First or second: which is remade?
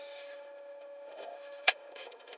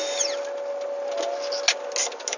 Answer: first